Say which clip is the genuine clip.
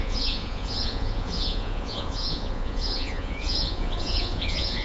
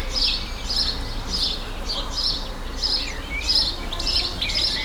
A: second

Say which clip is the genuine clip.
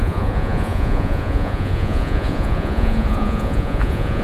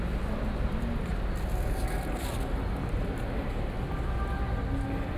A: second